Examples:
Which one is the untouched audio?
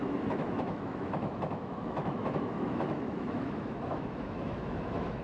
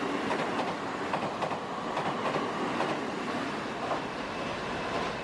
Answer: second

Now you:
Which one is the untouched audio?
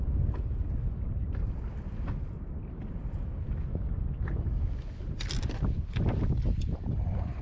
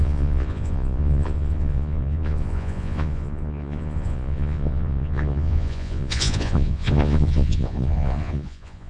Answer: first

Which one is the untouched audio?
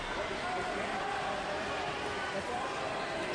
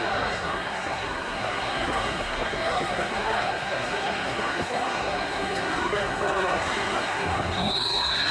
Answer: first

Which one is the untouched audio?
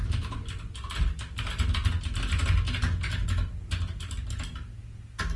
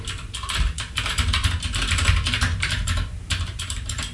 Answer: first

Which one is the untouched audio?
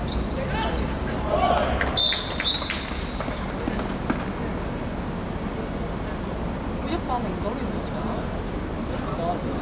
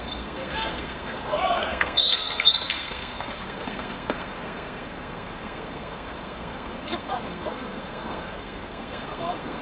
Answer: first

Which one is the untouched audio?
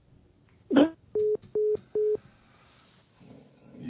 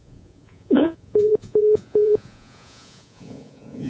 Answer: first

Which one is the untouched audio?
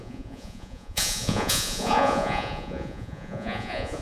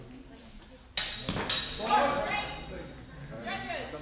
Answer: second